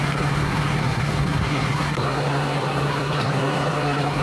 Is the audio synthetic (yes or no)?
yes